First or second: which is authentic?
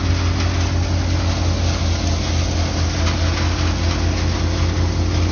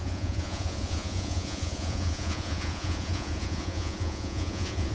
first